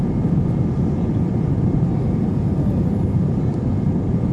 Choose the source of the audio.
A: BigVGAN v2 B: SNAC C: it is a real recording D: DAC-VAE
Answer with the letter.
A